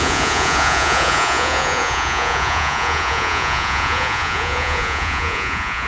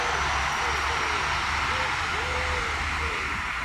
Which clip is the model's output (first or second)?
first